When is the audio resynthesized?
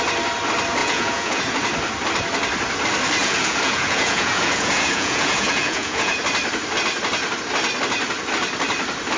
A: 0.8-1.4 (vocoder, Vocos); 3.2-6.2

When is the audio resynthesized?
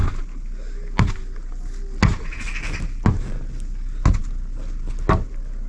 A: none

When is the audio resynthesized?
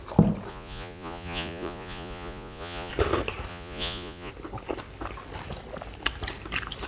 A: 0.5-2.9 (vocoder, Vocos); 3.5-4.3